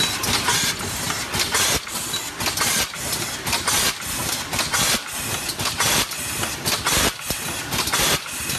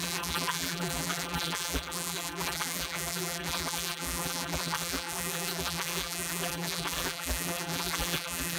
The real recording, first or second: first